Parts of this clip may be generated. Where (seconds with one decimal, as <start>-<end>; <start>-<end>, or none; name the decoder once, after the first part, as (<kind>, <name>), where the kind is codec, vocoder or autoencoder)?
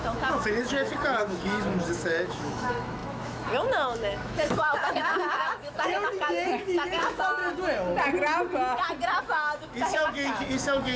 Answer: 0.0-7.4 (autoencoder, DAC-VAE); 9.2-11.0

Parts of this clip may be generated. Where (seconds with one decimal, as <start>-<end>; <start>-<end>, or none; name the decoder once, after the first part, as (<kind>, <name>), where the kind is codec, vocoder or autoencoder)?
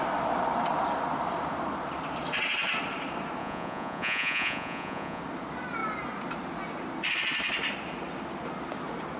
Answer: 3.4-5.2 (vocoder, Vocos)